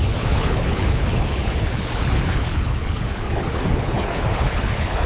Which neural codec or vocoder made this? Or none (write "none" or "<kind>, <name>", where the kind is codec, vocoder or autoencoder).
codec, HILCodec